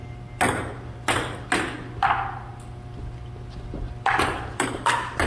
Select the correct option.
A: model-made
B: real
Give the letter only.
B